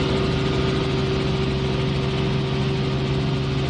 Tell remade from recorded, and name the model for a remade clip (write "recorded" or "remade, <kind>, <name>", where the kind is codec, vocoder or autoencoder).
recorded